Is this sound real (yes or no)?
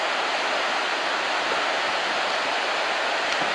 yes